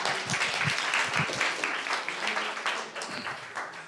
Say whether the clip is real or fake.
real